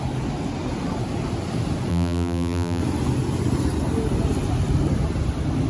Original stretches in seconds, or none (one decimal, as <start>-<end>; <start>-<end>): 0.0-1.9; 2.8-5.7